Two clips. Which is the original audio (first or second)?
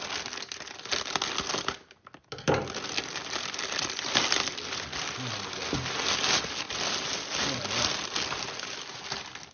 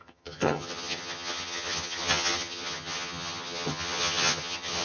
first